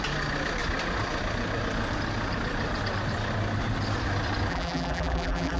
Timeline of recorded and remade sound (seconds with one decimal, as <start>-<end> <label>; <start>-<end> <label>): 0.0-4.5 recorded; 4.5-5.6 remade